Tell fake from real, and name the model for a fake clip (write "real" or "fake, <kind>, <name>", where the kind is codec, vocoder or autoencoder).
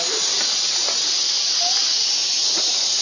real